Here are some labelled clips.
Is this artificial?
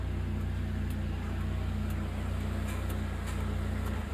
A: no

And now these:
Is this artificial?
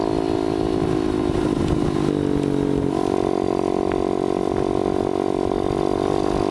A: no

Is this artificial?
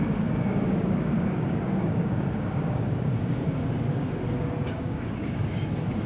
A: yes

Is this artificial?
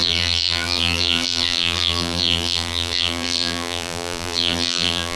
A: yes